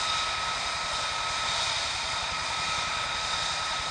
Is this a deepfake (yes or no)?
no